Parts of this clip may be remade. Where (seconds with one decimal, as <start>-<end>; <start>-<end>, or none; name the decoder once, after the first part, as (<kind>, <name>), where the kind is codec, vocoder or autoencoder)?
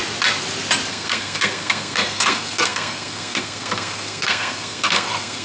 0.9-5.4 (codec, SNAC)